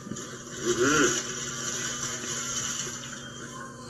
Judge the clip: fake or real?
real